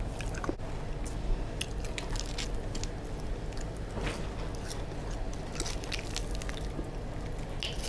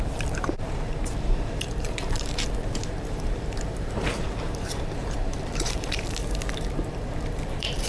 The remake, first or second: second